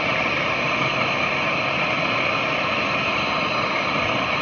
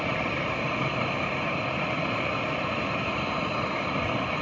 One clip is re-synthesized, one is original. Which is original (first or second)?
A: first